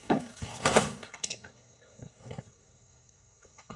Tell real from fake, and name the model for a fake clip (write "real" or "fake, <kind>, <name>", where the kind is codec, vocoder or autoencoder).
fake, codec, SNAC